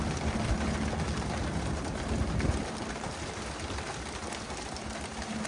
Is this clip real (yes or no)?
yes